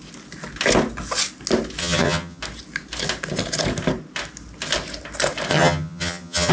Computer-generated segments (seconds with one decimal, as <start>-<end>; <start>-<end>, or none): 1.8-2.4; 5.5-6.5